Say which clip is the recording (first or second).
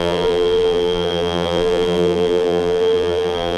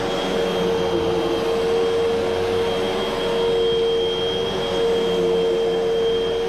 second